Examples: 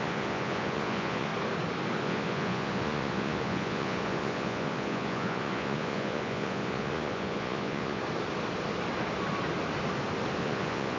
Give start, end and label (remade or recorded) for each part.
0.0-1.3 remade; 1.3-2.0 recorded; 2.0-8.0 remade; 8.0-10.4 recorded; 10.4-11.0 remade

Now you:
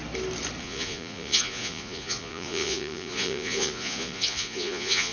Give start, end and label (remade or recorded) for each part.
0.0-0.6 recorded; 0.6-5.1 remade

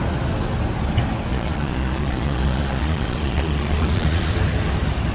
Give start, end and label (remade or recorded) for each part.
0.0-1.3 recorded; 1.3-4.3 remade; 4.3-5.1 recorded

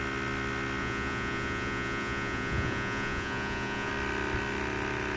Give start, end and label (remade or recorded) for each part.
0.0-0.8 recorded; 0.8-3.9 remade; 3.9-5.2 recorded